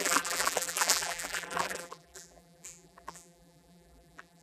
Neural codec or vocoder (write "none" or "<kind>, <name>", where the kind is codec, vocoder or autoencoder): vocoder, BigVGAN v2